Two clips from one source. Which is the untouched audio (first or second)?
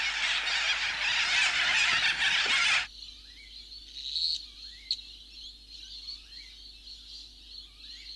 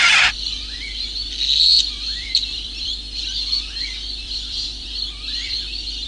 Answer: first